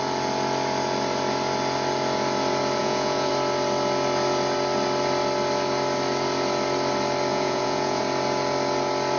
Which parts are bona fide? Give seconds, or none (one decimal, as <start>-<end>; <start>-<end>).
0.0-2.8; 3.3-7.3; 8.0-9.2